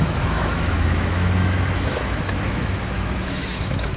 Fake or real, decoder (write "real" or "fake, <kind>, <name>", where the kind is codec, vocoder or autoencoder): fake, autoencoder, DAC-VAE